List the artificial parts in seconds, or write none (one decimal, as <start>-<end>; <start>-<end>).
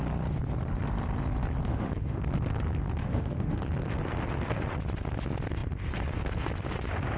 1.7-2.2; 3.0-3.6